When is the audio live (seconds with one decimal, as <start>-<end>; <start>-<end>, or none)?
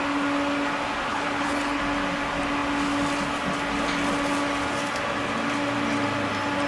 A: 0.0-1.1; 1.8-6.7